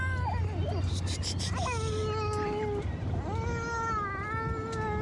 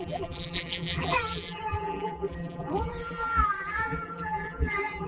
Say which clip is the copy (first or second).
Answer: second